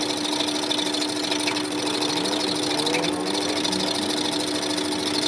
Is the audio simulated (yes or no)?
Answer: no